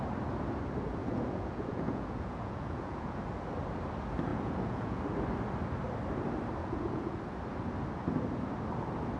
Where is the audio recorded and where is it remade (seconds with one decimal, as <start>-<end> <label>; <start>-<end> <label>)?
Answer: 0.0-1.0 recorded; 1.0-3.2 remade; 3.2-4.3 recorded; 4.3-5.0 remade; 5.0-6.6 recorded; 6.6-7.2 remade; 7.2-9.2 recorded